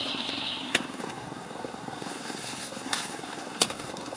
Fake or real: fake